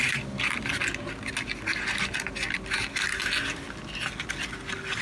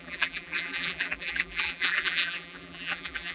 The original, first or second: first